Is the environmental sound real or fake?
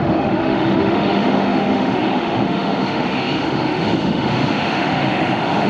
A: fake